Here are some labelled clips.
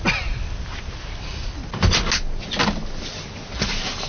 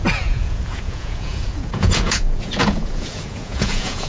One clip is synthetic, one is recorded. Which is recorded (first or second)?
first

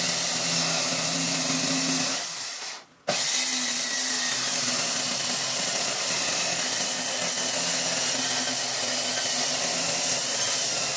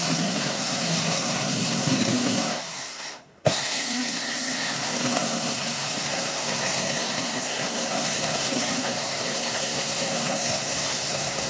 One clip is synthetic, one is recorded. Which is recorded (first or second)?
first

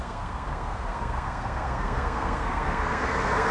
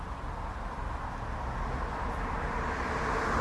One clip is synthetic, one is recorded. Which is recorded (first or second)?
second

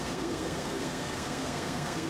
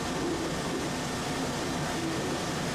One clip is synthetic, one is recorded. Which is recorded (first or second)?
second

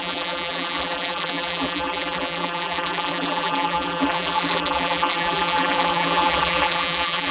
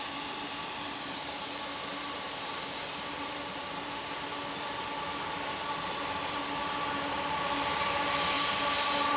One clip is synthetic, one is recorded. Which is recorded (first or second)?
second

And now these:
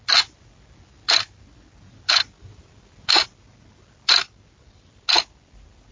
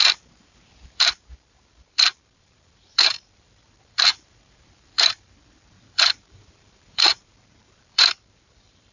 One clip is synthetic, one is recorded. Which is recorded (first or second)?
first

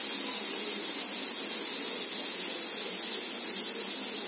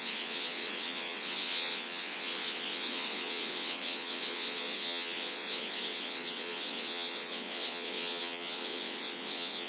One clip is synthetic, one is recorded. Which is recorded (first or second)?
first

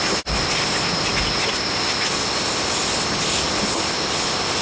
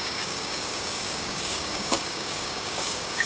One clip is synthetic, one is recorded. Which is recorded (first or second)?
first